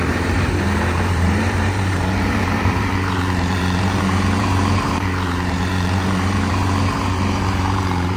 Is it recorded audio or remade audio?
remade